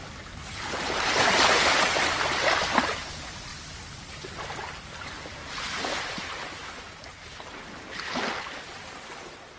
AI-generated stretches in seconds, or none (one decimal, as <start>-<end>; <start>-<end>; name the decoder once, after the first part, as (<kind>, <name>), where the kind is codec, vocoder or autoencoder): 3.5-4.4 (vocoder, BigVGAN v2); 5.4-8.2